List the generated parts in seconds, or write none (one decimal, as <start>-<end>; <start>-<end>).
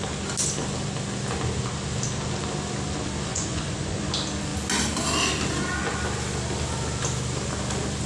3.3-4.1